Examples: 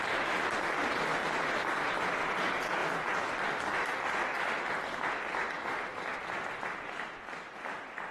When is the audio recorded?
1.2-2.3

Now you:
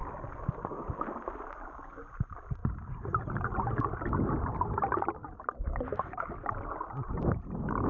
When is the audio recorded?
0.0-7.9

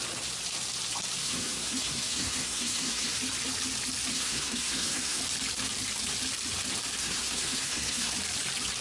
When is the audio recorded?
0.0-1.2; 3.2-4.1; 5.2-7.0; 8.1-8.8

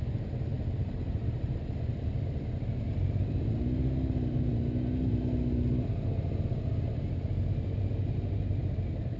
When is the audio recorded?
0.0-9.2